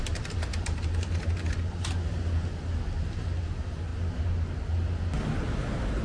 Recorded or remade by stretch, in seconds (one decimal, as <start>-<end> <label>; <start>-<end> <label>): 0.0-6.0 recorded